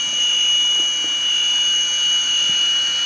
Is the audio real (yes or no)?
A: yes